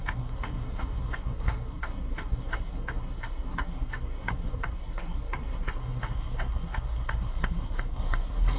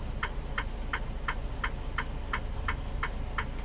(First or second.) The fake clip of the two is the first